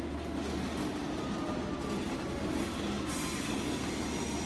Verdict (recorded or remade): recorded